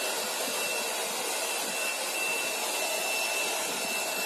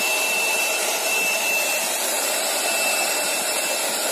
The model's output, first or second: second